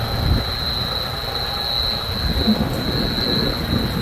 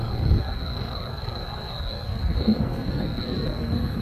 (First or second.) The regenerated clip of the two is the second